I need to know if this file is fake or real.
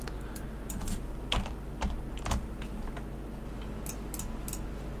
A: real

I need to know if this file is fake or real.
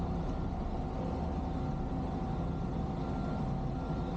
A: real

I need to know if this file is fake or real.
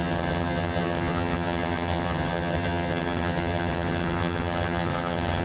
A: fake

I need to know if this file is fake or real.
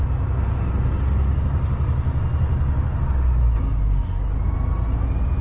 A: real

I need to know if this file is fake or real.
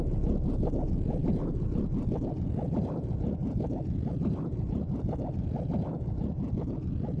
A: real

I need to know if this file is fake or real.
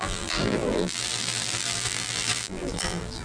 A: fake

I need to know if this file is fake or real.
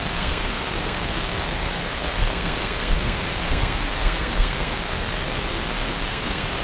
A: fake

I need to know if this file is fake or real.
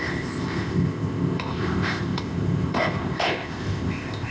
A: fake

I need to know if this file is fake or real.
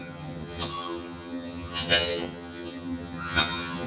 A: fake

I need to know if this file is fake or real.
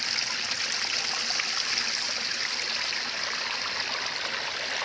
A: real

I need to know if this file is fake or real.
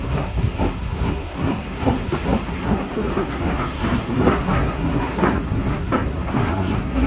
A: fake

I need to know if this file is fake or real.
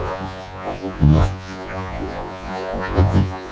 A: fake